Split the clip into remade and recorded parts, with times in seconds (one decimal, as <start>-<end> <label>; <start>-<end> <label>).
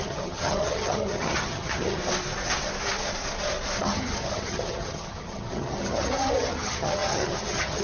0.0-2.0 remade; 2.0-3.8 recorded; 3.8-7.8 remade